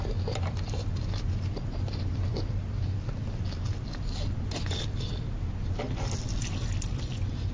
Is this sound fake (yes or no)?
no